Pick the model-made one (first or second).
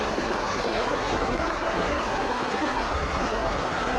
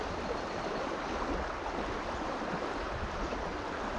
first